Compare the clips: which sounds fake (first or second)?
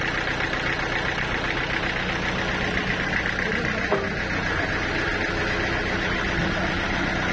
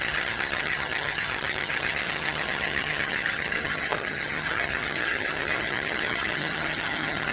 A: second